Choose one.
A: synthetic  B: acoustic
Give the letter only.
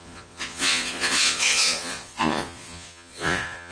A